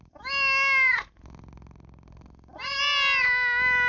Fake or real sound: real